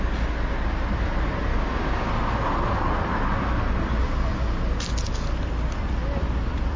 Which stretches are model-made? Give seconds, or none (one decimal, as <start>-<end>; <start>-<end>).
1.5-2.1